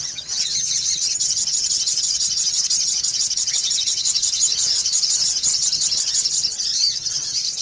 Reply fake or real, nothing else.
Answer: fake